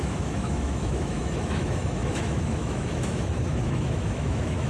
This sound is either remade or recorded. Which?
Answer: remade